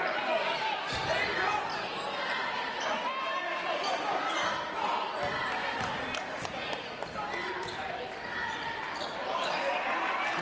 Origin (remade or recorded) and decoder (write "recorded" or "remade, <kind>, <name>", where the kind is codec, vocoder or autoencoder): recorded